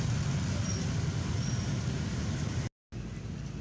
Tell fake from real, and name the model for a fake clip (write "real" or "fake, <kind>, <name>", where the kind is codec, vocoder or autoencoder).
real